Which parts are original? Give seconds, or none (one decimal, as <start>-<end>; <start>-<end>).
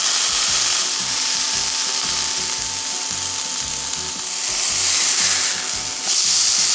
0.0-6.7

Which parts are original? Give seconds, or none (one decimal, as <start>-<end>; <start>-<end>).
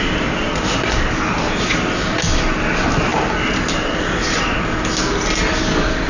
0.0-6.1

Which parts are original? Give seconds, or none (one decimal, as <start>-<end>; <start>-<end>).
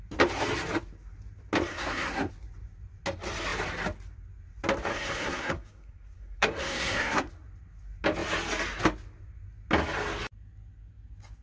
0.0-1.7; 2.3-4.9; 7.3-11.4